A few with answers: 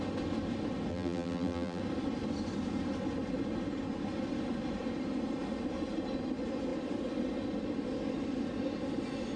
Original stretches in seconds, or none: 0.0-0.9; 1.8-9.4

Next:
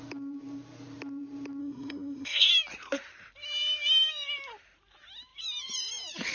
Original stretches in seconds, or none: 0.0-1.6; 2.5-6.3